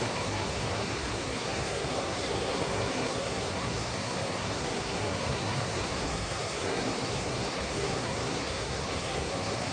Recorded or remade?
remade